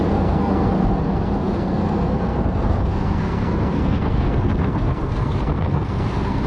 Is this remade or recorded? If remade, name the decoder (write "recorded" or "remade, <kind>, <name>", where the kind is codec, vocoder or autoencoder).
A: remade, codec, SNAC